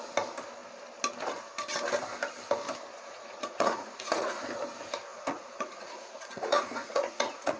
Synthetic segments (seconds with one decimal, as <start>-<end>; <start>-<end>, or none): 2.9-4.4; 5.1-7.6